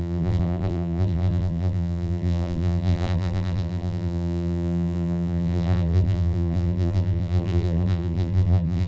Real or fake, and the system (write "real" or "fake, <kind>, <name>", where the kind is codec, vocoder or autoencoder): fake, vocoder, BigVGAN v2